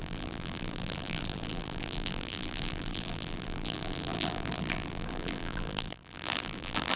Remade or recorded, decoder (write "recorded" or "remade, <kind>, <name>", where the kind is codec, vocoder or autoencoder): remade, vocoder, BigVGAN v2